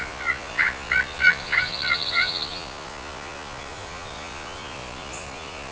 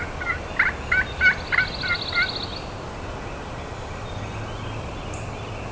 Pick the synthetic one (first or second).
first